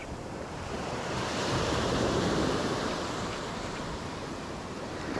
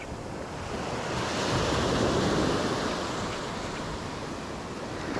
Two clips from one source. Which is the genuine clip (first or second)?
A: second